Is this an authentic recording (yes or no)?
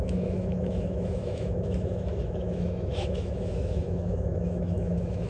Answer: no